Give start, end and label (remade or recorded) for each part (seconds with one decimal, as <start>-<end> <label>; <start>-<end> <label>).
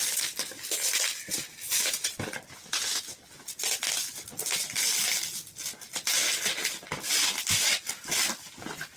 0.0-9.0 recorded